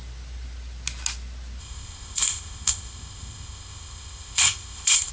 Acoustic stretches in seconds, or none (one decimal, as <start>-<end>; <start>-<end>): 0.0-1.6